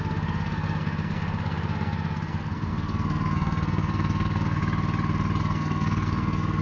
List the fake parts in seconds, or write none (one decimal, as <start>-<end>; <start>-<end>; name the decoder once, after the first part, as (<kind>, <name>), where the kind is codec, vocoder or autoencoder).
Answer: 0.0-4.6 (codec, SNAC); 5.4-6.6